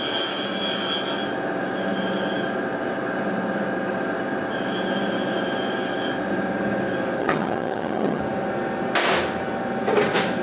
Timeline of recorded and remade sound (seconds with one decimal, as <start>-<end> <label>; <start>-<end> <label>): 0.0-7.2 recorded; 7.2-8.2 remade; 8.2-10.4 recorded